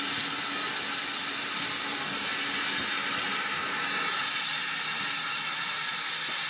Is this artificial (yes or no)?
no